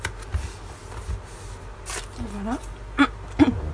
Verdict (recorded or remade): recorded